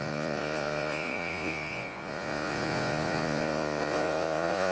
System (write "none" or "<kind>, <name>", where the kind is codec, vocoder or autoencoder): vocoder, Vocos